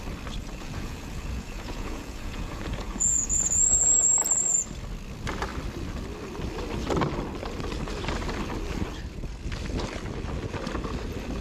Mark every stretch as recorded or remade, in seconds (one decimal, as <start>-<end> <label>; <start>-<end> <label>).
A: 0.0-0.4 recorded; 0.4-4.1 remade; 4.1-11.4 recorded